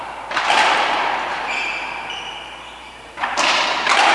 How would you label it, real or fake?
fake